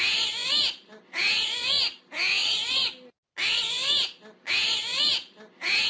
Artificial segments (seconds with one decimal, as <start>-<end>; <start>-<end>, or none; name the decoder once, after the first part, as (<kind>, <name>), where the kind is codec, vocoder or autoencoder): none

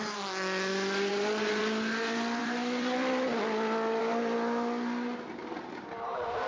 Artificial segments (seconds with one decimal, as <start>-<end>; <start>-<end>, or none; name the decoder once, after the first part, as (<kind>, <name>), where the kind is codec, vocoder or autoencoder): 1.1-1.6 (vocoder, BigVGAN v2); 2.4-4.0; 5.4-5.9

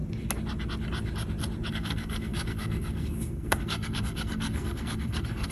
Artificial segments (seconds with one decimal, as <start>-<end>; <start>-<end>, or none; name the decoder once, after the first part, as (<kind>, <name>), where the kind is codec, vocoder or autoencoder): 1.7-5.5 (codec, SNAC)

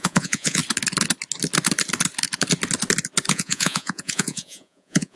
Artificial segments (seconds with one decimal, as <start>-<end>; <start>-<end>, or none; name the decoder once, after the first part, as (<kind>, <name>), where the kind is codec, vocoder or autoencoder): 0.0-0.6 (vocoder, Vocos); 3.3-5.2